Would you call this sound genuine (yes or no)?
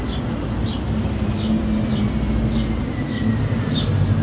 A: yes